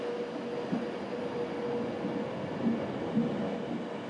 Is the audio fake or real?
real